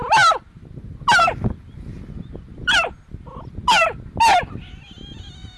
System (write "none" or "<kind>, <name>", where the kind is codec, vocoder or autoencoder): none